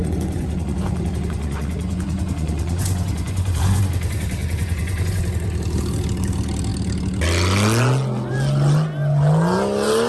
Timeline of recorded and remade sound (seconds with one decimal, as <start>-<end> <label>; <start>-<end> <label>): 0.0-3.9 remade; 3.9-4.4 recorded; 4.4-5.2 remade; 5.2-10.1 recorded